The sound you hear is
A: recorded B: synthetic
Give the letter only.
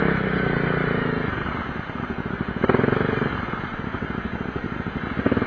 A